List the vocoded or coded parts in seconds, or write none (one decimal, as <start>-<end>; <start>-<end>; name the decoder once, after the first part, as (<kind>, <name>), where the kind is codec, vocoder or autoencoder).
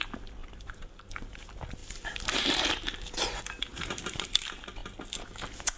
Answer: 0.4-1.1 (vocoder, BigVGAN v2); 3.7-4.3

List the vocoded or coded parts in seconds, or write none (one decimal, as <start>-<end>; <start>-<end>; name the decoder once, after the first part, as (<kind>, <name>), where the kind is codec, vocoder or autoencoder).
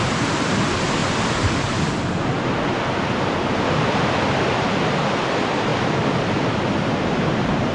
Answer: 0.0-1.0 (vocoder, BigVGAN v2); 4.4-5.7; 6.5-7.7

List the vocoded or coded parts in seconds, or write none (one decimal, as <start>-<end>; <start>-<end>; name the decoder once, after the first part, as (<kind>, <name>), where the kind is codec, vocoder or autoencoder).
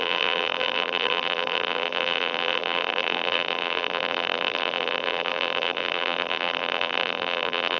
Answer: 0.0-7.8 (vocoder, BigVGAN v2)